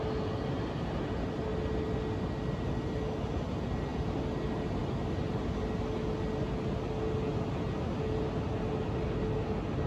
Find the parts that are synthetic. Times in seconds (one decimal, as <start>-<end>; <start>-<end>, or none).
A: none